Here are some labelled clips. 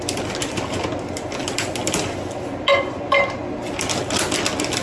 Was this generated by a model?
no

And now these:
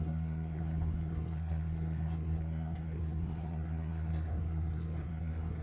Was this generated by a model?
yes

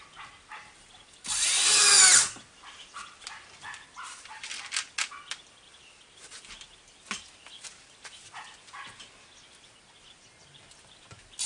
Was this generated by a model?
no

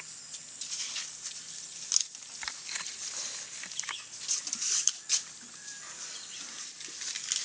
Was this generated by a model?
no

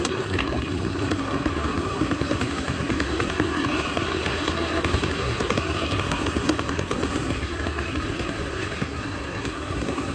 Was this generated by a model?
yes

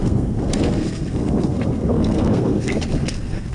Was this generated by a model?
yes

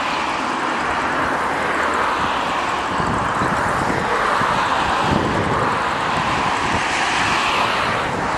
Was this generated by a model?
no